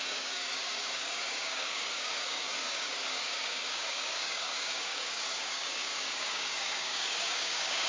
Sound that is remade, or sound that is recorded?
remade